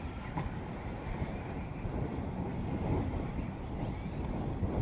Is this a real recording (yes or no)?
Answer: yes